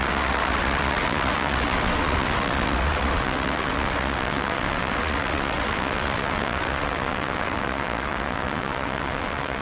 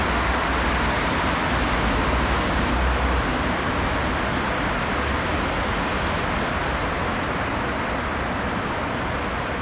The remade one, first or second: first